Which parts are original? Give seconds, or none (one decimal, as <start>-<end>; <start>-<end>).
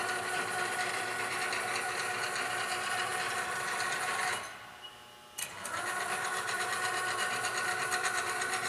1.7-3.1; 4.2-5.6